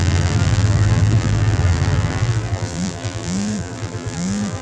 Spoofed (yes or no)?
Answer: yes